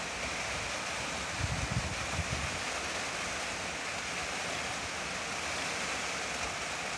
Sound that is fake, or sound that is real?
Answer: real